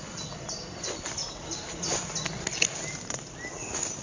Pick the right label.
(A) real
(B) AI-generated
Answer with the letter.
A